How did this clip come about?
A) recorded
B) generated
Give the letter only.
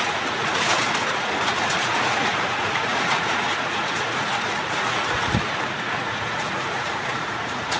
B